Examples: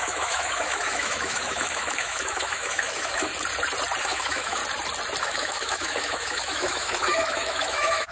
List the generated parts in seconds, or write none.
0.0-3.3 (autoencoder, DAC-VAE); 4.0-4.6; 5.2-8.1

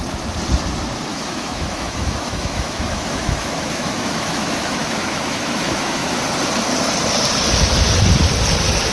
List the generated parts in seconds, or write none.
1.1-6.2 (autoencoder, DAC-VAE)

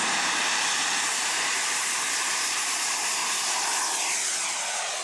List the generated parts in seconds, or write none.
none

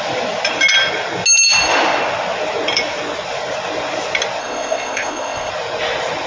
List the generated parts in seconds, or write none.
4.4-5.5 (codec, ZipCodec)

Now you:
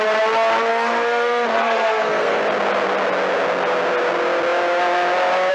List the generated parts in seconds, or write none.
0.7-2.4 (codec, SNAC)